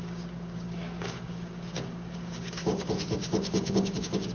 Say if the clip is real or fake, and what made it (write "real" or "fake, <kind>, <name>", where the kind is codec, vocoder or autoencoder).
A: fake, codec, DAC